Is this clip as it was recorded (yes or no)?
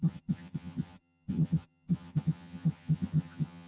no